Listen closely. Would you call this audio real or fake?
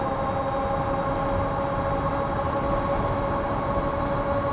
real